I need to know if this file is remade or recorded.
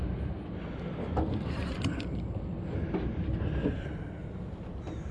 recorded